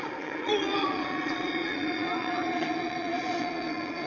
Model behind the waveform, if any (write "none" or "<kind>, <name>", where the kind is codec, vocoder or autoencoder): vocoder, Vocos